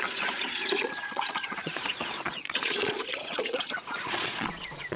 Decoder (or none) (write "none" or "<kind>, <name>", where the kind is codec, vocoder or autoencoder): vocoder, Vocos